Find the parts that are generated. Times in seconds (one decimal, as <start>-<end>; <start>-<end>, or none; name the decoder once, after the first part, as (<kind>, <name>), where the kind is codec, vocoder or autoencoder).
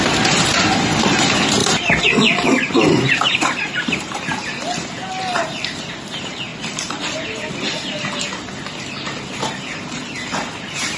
1.6-4.2 (vocoder, BigVGAN v2); 6.5-7.5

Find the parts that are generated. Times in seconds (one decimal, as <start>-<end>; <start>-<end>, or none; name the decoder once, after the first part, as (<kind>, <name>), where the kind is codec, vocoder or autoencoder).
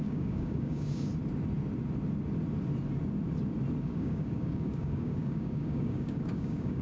0.0-1.1 (codec, DAC); 3.8-6.8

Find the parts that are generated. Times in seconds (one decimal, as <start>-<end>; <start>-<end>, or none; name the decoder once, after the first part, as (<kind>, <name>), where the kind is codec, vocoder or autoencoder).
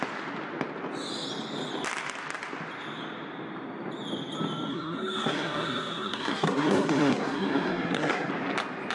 4.7-8.3 (codec, SNAC)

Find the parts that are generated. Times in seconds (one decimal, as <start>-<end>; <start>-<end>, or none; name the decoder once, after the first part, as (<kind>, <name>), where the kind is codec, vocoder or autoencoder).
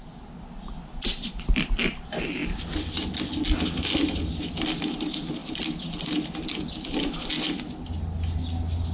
none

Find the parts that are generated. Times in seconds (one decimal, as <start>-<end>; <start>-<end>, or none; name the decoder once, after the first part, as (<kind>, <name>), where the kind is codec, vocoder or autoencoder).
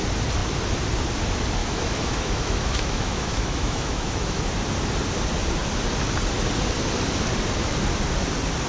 1.6-4.4 (autoencoder, DAC-VAE)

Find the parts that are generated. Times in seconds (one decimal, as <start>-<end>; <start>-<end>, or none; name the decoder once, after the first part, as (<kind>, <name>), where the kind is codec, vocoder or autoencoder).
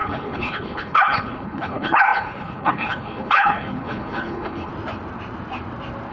0.0-4.7 (codec, HILCodec)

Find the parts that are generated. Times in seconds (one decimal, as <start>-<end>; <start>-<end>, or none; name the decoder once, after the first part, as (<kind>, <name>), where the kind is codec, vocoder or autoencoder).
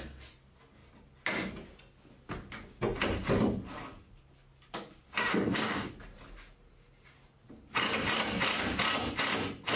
5.3-5.9 (codec, DAC)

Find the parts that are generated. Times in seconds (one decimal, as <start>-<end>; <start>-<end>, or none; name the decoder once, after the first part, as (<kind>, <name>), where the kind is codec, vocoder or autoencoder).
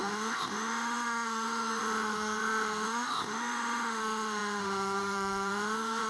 0.0-6.1 (autoencoder, DAC-VAE)